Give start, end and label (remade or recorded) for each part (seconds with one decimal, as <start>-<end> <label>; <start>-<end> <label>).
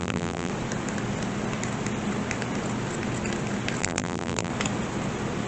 0.0-0.5 remade; 0.5-3.8 recorded; 3.8-4.5 remade; 4.5-5.5 recorded